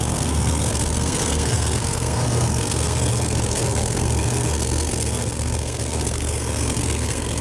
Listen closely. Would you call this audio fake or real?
fake